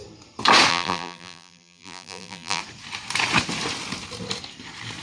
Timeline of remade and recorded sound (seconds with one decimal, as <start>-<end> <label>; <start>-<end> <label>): 0.0-0.7 recorded; 0.7-2.6 remade; 2.6-5.0 recorded